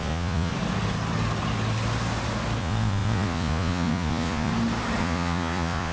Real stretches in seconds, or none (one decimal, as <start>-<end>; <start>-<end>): 0.5-2.6; 4.5-5.0